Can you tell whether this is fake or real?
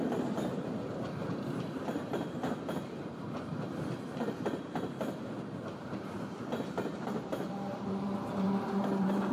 fake